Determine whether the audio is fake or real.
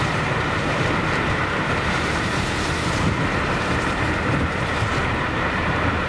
fake